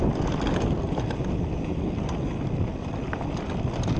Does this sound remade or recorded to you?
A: recorded